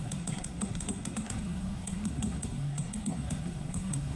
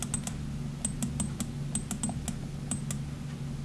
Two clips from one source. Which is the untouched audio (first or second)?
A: second